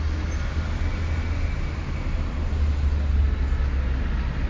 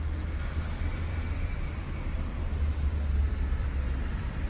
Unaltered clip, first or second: first